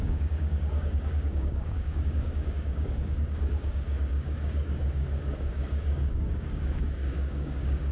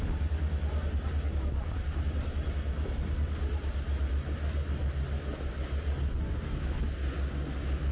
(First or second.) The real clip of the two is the second